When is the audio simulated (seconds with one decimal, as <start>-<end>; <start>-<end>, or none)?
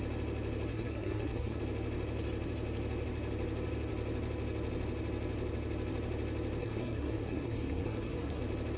0.7-1.6; 6.6-8.4